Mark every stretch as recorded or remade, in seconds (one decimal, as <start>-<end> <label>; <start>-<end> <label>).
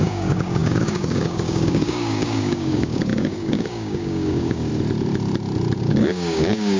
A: 0.0-4.7 remade; 4.7-5.8 recorded; 5.8-6.8 remade